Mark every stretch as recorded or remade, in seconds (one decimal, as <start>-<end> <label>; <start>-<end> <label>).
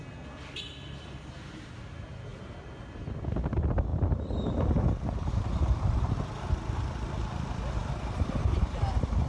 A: 0.0-2.3 recorded; 2.3-3.1 remade; 3.1-9.3 recorded